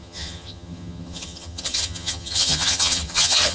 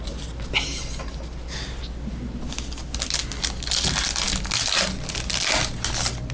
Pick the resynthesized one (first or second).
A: first